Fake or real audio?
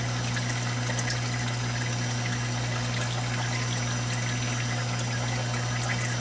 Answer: real